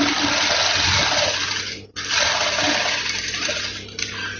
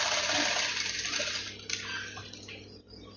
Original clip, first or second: second